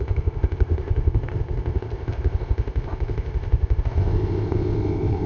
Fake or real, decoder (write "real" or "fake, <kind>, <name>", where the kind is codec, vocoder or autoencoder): fake, codec, ZipCodec